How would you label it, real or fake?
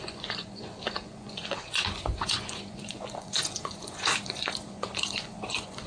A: fake